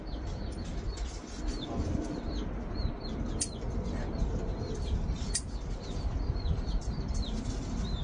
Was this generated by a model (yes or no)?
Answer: no